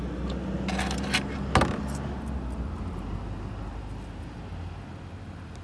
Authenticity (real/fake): real